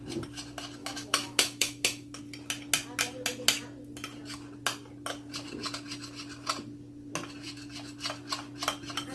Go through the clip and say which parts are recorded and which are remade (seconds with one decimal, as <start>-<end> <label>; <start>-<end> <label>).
0.0-0.8 recorded; 0.8-2.2 remade; 2.2-9.1 recorded